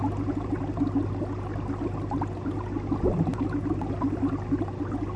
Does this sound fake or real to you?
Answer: real